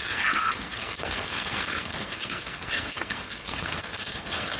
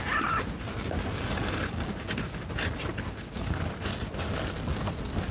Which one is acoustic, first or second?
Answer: second